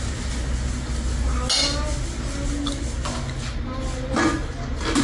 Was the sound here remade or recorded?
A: recorded